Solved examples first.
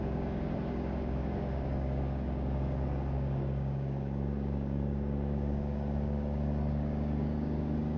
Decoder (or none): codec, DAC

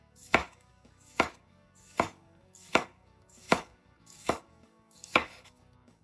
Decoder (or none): codec, DAC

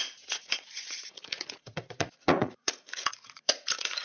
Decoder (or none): vocoder, Vocos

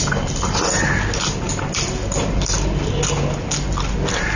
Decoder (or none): none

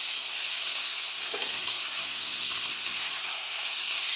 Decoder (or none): codec, SNAC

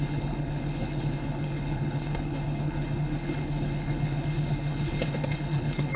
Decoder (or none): codec, HILCodec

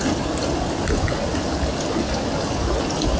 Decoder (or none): none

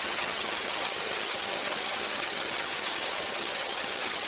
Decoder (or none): vocoder, HiFi-GAN